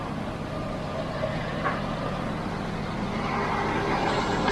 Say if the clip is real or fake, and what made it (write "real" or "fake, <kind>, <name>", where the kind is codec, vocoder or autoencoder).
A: real